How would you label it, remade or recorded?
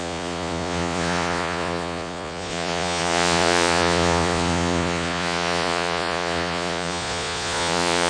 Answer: remade